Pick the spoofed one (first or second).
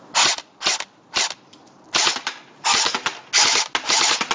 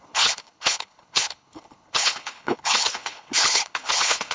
second